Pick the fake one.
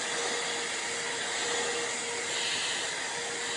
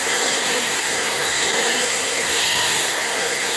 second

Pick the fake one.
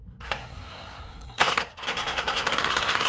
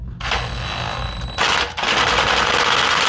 first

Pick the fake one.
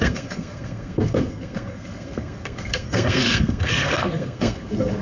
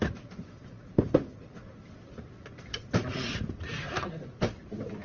first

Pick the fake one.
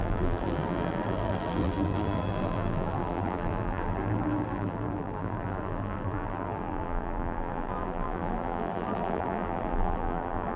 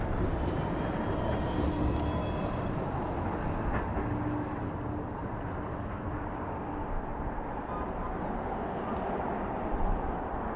first